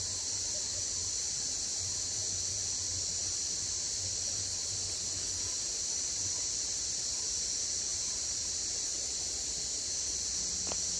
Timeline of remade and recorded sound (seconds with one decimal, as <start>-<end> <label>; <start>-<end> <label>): 0.0-7.9 recorded; 7.9-8.4 remade; 8.4-11.0 recorded